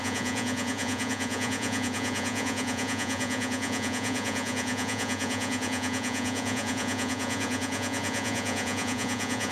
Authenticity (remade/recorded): remade